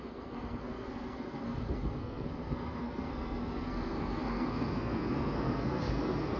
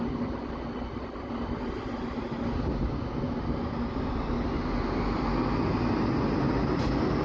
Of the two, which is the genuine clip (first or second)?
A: second